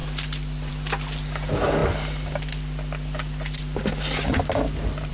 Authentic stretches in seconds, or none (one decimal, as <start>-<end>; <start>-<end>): 0.0-5.1